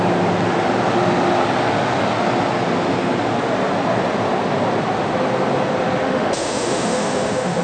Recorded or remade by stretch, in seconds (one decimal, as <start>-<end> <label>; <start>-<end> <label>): 0.0-6.0 recorded; 6.0-7.6 remade